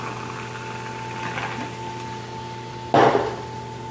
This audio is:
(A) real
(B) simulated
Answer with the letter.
A